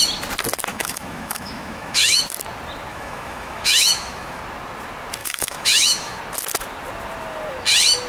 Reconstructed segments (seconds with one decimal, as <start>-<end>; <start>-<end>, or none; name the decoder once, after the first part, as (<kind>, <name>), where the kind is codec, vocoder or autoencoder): 0.7-2.2 (autoencoder, DAC-VAE); 2.9-4.4; 5.2-6.2